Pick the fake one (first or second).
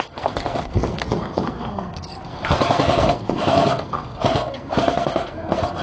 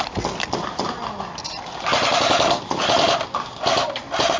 first